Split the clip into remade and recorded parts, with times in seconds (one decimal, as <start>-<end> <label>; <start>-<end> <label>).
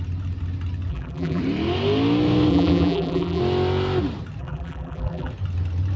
0.0-0.9 recorded; 0.9-1.4 remade; 1.4-2.5 recorded; 2.5-3.4 remade; 3.4-4.4 recorded; 4.4-5.3 remade; 5.3-6.0 recorded